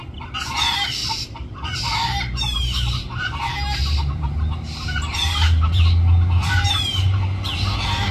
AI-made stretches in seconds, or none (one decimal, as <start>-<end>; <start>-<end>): 1.0-5.8; 6.4-7.2

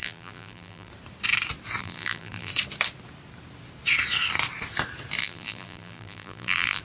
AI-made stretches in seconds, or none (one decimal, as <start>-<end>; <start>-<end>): 0.0-0.9; 1.8-2.5; 5.2-6.8

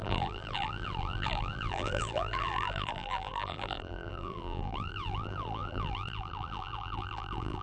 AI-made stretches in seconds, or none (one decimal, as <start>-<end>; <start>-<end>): 0.0-7.6

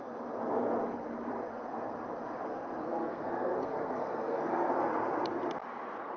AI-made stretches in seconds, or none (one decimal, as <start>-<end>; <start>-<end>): 2.8-4.7